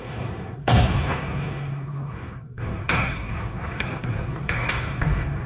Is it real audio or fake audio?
fake